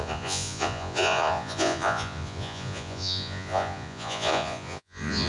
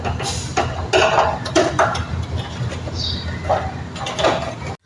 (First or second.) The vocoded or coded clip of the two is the first